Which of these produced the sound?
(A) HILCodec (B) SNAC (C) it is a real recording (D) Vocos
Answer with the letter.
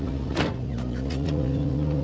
D